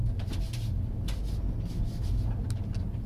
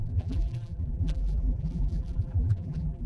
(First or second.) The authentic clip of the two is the first